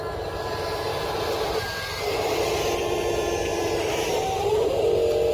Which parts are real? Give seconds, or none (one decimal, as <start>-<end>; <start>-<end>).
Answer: 0.0-5.3